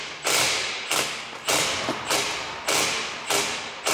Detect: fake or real real